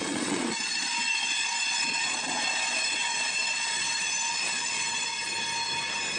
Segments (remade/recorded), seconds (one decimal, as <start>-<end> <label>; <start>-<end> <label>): 0.0-5.2 remade; 5.2-6.2 recorded